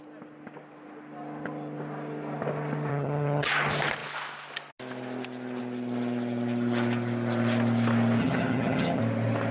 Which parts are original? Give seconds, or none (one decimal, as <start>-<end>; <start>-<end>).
0.0-2.9; 3.5-8.2; 9.0-9.5